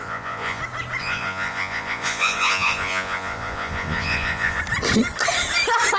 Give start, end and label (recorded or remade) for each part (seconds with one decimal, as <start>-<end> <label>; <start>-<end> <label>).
0.0-0.6 remade; 0.6-1.0 recorded; 1.0-4.6 remade; 4.6-6.0 recorded